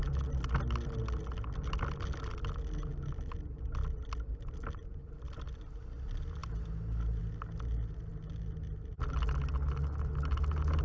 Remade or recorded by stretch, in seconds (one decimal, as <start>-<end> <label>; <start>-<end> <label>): 0.0-10.8 recorded